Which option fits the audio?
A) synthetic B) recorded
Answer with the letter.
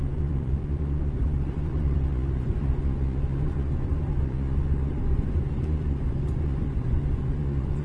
A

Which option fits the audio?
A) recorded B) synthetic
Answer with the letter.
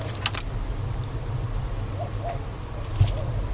A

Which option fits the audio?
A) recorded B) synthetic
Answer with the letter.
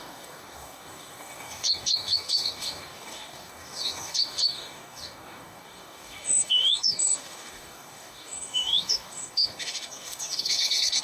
B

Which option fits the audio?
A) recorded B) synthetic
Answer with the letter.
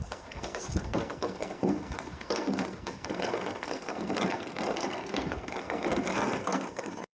B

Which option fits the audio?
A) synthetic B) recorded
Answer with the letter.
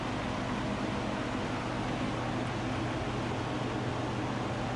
B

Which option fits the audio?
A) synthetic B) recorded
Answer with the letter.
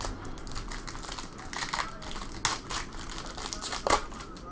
B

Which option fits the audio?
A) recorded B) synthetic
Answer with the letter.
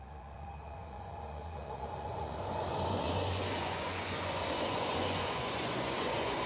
B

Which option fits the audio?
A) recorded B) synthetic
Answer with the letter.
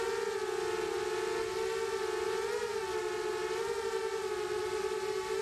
A